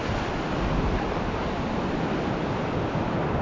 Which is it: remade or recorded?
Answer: recorded